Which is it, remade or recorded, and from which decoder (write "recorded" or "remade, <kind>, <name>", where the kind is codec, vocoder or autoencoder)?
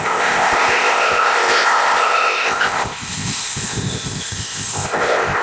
remade, codec, ZipCodec